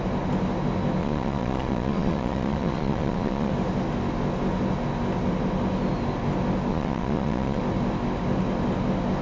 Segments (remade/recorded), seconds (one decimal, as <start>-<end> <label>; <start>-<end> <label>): 0.0-1.0 recorded; 1.0-3.5 remade; 3.5-6.7 recorded; 6.7-7.6 remade; 7.6-9.2 recorded